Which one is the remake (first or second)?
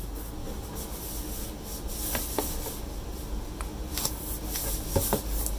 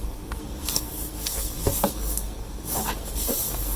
second